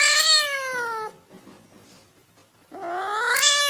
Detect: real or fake real